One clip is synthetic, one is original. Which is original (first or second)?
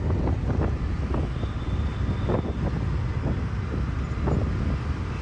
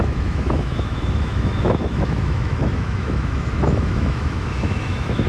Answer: first